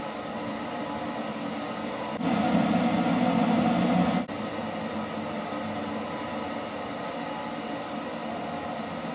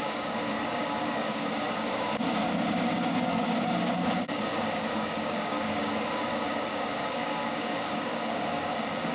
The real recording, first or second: first